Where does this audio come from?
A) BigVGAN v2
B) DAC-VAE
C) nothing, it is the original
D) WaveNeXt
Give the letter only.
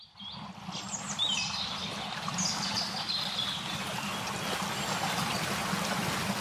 C